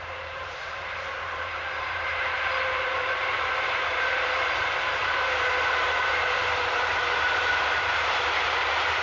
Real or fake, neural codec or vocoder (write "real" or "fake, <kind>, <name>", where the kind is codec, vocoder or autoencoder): fake, vocoder, BigVGAN v2